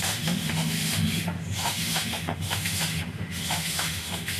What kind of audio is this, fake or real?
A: fake